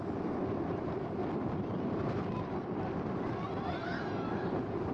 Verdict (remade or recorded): remade